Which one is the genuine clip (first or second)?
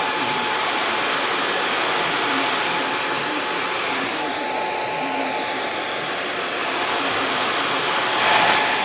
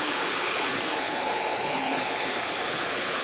first